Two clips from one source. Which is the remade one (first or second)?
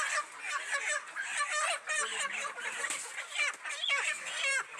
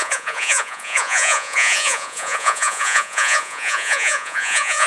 second